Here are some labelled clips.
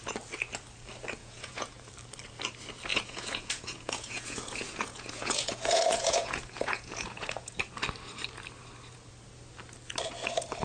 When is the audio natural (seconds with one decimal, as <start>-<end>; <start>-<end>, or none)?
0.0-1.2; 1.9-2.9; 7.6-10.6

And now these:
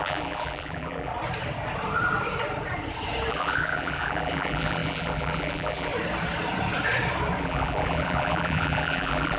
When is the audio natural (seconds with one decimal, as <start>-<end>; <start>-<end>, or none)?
1.1-3.3; 5.9-7.4

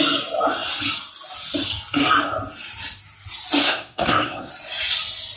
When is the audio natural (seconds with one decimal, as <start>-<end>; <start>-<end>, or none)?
0.0-3.6; 4.5-5.4

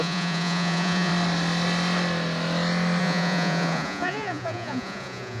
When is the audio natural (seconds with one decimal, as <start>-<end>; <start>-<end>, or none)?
1.1-3.0